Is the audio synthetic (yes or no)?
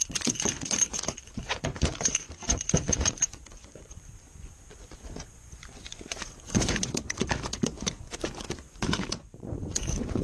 yes